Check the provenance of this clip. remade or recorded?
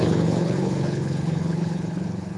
remade